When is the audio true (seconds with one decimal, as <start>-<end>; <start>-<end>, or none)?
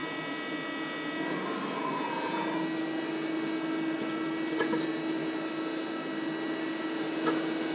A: 0.0-7.7